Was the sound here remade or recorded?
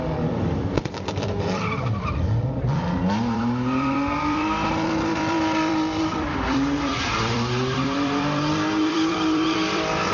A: remade